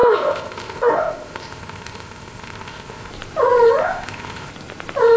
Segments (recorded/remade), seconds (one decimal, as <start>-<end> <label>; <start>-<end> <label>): 0.0-3.1 remade; 3.1-3.8 recorded; 3.8-4.5 remade; 4.5-5.2 recorded